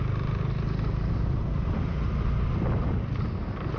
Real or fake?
real